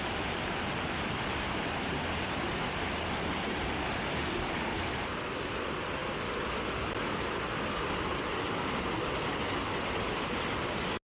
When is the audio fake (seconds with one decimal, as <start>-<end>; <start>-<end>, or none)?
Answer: none